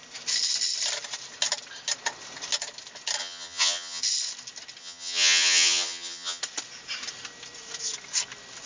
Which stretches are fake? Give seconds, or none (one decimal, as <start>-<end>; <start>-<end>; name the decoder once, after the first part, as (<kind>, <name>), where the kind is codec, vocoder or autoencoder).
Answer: 3.2-4.0 (vocoder, HiFi-GAN); 4.8-6.4